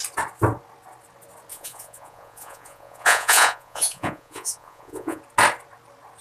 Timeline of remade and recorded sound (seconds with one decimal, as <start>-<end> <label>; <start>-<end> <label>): 0.0-1.5 recorded; 1.5-5.2 remade; 5.2-6.2 recorded